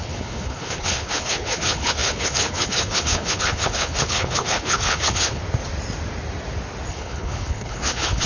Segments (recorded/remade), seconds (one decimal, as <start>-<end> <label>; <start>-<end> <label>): 0.0-5.4 remade; 5.4-6.9 recorded; 6.9-8.3 remade